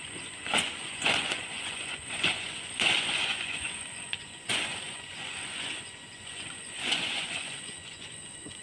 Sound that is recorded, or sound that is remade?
remade